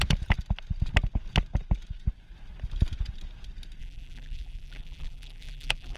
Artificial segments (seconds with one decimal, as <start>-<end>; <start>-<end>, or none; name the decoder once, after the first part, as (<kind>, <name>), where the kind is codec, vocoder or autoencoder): 3.8-6.0 (vocoder, BigVGAN v2)